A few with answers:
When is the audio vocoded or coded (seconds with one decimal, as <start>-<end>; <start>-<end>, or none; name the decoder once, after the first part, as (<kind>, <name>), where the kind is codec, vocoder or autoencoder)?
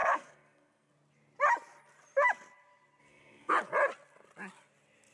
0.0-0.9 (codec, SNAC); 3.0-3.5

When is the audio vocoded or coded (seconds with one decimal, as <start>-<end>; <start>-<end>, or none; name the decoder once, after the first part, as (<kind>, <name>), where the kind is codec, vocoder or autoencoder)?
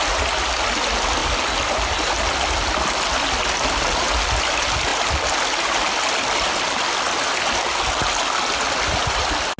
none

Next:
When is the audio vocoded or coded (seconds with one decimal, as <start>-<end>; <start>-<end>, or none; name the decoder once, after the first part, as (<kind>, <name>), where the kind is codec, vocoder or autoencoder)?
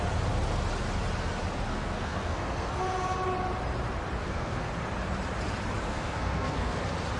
1.7-2.7 (codec, SNAC); 4.2-4.7; 5.9-6.8